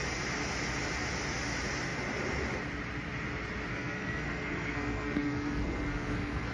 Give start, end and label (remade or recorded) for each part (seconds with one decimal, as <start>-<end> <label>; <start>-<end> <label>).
0.0-3.7 recorded; 3.7-6.5 remade